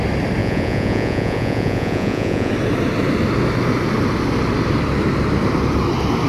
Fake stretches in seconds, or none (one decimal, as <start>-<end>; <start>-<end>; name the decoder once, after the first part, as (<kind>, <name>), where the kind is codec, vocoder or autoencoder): 0.4-2.5 (vocoder, Vocos)